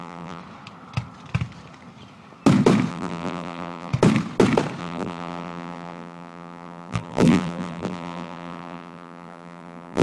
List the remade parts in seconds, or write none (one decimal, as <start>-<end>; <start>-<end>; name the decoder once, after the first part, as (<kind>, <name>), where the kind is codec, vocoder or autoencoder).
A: 0.0-0.4 (vocoder, BigVGAN v2); 2.9-3.9; 4.8-10.0